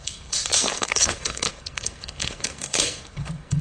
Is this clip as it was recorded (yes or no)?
no